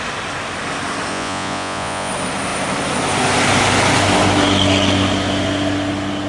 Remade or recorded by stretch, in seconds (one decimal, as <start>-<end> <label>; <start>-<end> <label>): 0.0-1.1 recorded; 1.1-2.1 remade; 2.1-6.3 recorded